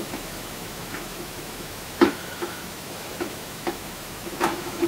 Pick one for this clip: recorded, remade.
remade